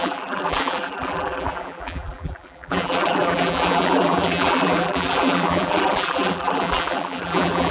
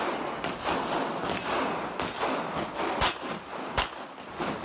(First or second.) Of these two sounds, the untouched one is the second